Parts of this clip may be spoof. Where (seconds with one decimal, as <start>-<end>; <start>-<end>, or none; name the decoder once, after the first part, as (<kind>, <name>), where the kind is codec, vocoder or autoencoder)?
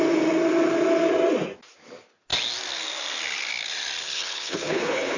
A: 4.0-5.2 (codec, HILCodec)